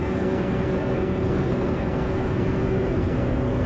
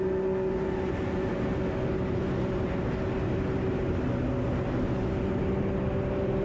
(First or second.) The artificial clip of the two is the first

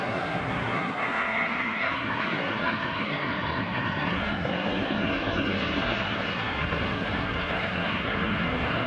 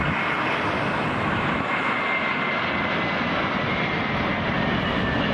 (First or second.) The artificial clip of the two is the first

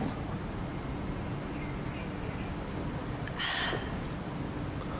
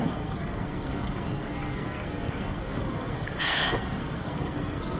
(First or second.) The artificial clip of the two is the second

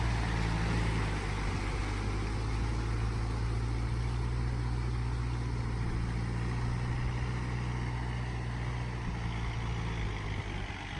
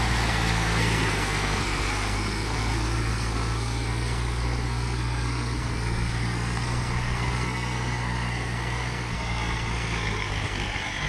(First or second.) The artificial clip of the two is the second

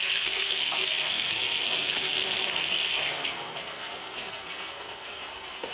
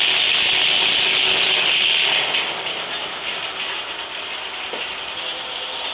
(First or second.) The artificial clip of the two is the first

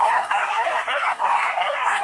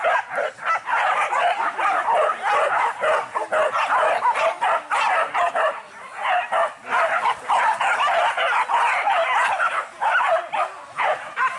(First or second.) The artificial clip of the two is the first